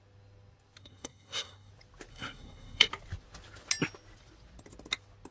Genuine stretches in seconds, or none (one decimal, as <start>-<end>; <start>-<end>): 0.0-0.8; 1.7-2.1; 2.9-5.3